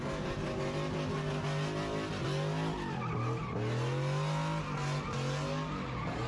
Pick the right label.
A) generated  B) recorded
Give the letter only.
B